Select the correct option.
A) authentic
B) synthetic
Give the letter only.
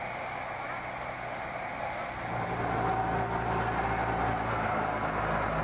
A